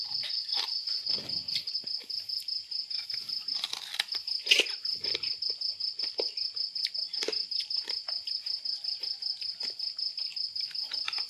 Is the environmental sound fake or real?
real